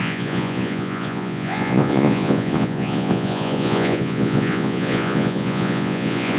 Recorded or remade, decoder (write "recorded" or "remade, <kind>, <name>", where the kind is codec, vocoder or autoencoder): remade, vocoder, Vocos